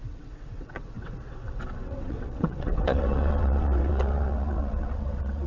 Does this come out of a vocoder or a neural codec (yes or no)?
yes